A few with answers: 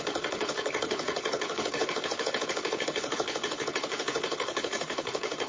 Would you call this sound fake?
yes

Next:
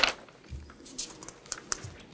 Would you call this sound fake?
no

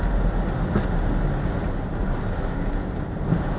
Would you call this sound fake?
no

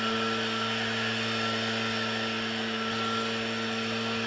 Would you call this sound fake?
no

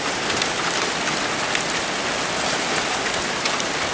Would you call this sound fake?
no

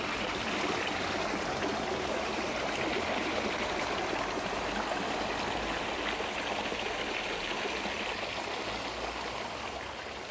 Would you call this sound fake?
no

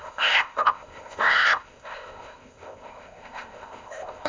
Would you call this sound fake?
yes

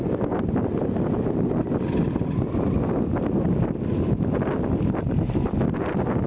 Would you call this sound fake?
no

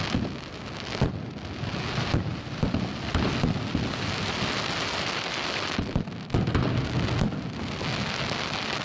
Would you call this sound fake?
no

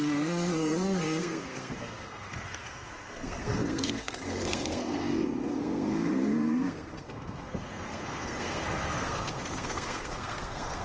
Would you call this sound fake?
yes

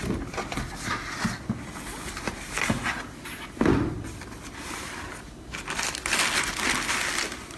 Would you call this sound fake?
no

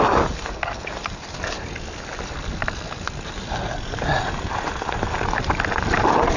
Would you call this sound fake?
no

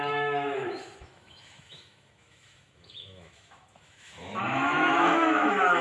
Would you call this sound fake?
yes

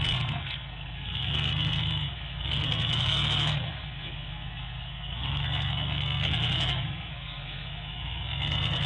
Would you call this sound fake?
yes